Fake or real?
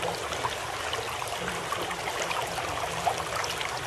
real